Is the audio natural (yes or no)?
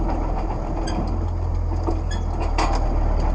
yes